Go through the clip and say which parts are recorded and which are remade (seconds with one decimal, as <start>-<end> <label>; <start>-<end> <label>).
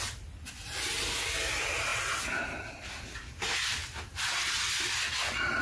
0.0-5.6 recorded